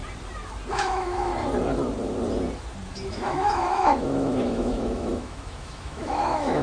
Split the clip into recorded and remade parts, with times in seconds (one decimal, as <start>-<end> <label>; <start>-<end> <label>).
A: 0.0-0.7 recorded; 0.7-1.3 remade; 1.3-3.1 recorded; 3.1-6.6 remade